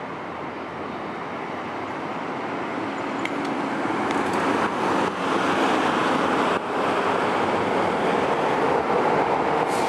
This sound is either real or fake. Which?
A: real